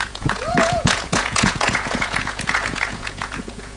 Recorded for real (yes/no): no